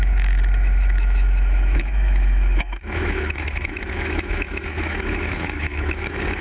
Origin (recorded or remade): remade